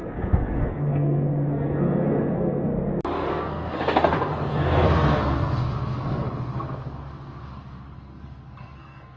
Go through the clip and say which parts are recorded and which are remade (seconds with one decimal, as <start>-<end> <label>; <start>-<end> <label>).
0.0-2.7 remade; 2.7-3.3 recorded; 3.3-9.2 remade